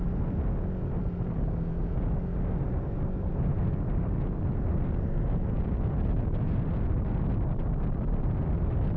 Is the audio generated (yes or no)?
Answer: no